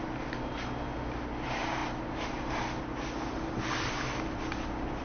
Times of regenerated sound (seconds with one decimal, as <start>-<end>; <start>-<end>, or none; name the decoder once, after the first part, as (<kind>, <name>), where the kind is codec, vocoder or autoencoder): none

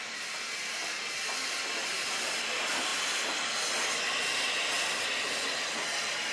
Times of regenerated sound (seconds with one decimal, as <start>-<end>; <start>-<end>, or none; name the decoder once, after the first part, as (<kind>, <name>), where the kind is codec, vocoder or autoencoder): none